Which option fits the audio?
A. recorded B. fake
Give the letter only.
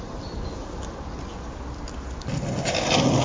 A